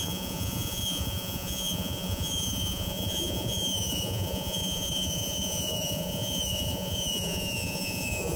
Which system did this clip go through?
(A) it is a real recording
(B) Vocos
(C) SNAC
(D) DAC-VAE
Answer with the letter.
B